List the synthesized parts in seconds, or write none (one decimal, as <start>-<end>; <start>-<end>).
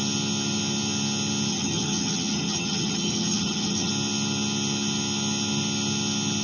1.5-3.9